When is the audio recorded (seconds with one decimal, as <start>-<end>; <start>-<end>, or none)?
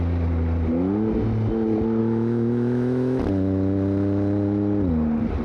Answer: 0.0-2.0; 3.2-5.4